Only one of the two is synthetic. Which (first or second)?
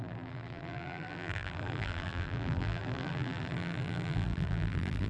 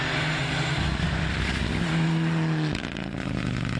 first